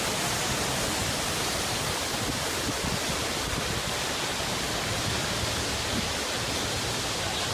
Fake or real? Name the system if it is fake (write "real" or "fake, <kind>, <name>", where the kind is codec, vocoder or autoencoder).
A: real